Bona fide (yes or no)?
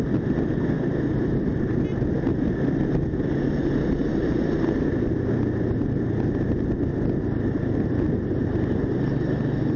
yes